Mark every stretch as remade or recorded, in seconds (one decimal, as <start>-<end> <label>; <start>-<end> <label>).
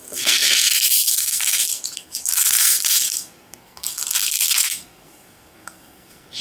0.0-6.4 remade